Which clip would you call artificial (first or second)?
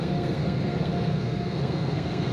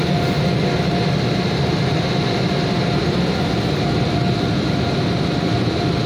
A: first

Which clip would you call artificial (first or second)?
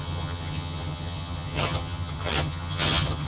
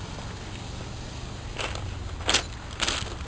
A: first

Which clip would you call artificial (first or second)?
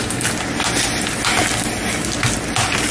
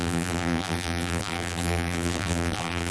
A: second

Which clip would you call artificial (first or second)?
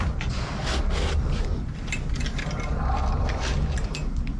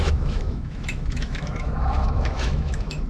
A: second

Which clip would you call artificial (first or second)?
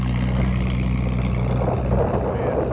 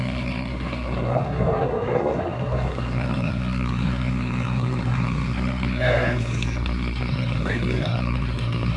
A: second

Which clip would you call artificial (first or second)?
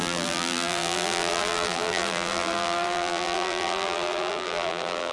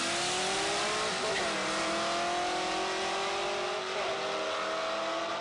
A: first